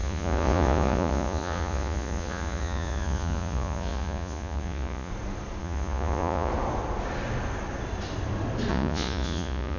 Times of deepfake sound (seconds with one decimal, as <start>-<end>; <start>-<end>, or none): 0.0-5.1; 5.6-6.5; 8.7-9.8